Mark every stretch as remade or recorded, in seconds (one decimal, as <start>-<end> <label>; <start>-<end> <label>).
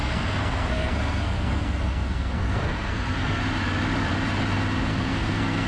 0.0-3.4 remade; 3.4-4.9 recorded; 4.9-5.7 remade